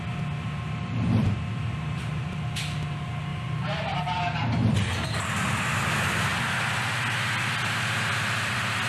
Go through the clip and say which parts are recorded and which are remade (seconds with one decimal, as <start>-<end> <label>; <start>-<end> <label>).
0.0-3.3 recorded; 3.3-4.0 remade; 4.0-8.9 recorded

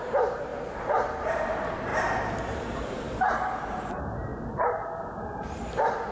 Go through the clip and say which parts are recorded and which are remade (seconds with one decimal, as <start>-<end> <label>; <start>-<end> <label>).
0.0-1.9 remade; 1.9-2.5 recorded; 2.5-4.3 remade; 4.3-5.0 recorded; 5.0-6.1 remade